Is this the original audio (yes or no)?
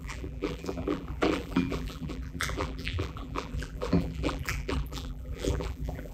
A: no